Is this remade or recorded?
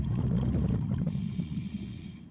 remade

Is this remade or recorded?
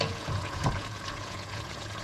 remade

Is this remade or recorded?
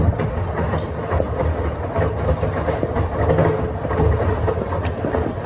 recorded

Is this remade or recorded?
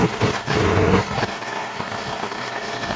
remade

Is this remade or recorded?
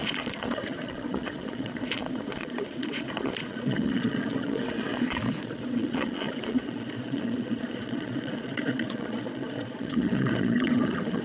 remade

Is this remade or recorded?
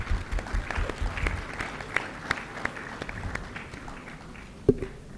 recorded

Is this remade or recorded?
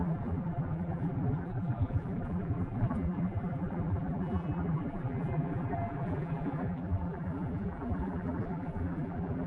remade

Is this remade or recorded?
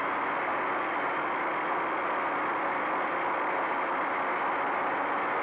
recorded